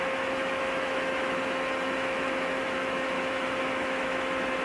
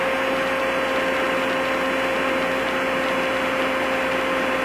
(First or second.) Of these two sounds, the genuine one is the second